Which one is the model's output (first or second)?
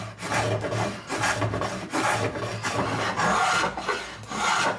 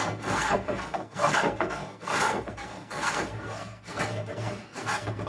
second